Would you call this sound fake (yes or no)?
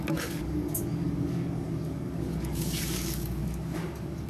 yes